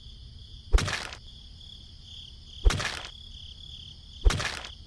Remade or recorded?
recorded